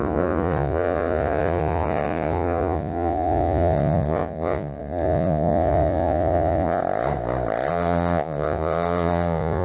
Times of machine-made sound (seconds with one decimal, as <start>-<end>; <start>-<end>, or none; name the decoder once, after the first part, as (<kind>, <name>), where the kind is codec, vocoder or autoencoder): 0.0-6.8 (vocoder, Vocos); 7.7-9.6